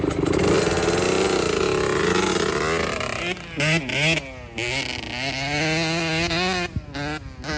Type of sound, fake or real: real